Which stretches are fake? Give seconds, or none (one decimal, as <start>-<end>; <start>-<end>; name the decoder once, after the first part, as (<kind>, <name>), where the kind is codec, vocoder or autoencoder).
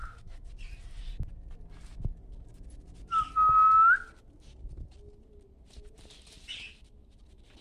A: 0.0-0.5 (autoencoder, DAC-VAE)